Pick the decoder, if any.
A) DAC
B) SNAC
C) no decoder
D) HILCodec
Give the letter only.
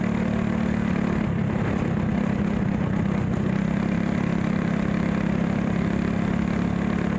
C